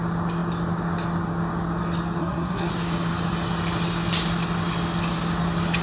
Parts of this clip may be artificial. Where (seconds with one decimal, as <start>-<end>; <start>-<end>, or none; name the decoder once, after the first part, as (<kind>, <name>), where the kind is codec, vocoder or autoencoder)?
2.2-2.7 (codec, SNAC)